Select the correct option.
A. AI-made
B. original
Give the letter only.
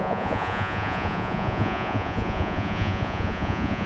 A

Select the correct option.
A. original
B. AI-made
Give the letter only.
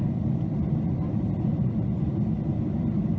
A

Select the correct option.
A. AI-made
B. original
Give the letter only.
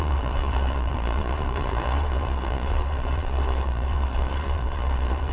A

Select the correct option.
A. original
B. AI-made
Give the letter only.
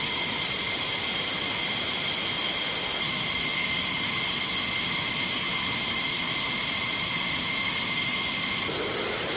A